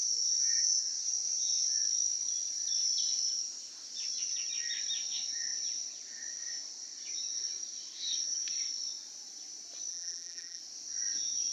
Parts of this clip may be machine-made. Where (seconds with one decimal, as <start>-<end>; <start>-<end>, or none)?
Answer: 9.9-10.6